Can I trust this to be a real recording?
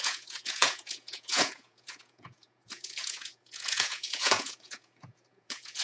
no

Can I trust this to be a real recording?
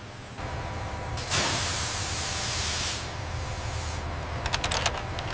yes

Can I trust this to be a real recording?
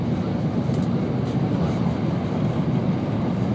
yes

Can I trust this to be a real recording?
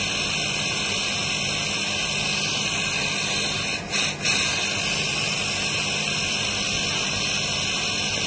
yes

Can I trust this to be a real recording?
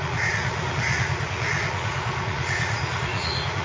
no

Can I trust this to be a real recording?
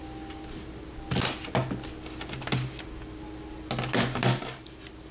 yes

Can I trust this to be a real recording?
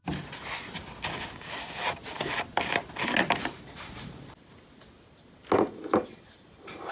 yes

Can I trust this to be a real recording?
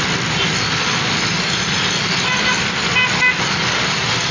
yes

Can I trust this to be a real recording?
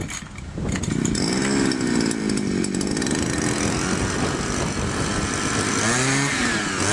yes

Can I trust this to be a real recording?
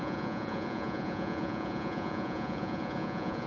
no